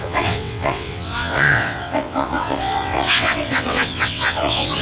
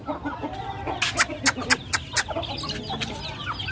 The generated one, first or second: first